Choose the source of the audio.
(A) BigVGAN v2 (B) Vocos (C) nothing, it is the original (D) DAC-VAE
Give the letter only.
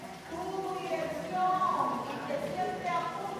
C